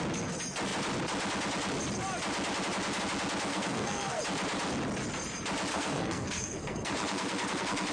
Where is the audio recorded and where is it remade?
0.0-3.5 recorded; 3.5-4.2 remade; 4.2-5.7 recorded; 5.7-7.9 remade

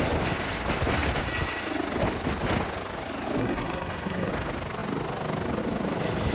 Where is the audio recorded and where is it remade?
0.0-3.4 recorded; 3.4-4.3 remade; 4.3-6.3 recorded

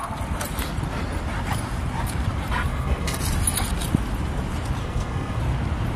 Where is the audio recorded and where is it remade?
0.0-2.7 recorded; 2.7-3.2 remade; 3.2-4.8 recorded; 4.8-5.4 remade; 5.4-6.0 recorded

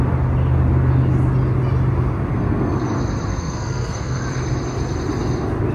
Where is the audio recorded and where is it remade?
0.0-2.3 recorded; 2.3-2.8 remade; 2.8-3.3 recorded; 3.3-4.2 remade; 4.2-5.7 recorded

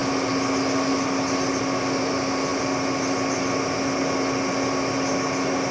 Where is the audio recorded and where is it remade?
0.0-5.7 recorded